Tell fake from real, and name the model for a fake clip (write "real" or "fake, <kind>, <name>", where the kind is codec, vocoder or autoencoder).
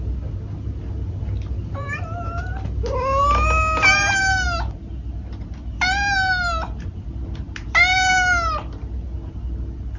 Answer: real